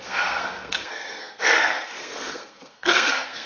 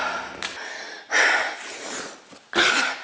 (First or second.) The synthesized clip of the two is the first